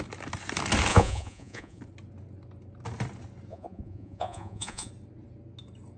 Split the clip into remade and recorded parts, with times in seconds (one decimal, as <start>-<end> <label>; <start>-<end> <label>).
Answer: 0.0-0.9 recorded; 0.9-1.8 remade; 1.8-3.5 recorded; 3.5-4.9 remade; 4.9-6.0 recorded